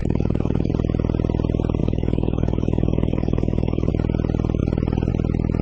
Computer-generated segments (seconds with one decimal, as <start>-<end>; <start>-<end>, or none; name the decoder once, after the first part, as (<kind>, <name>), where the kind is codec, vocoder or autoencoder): 0.0-0.7 (codec, DAC); 1.8-3.9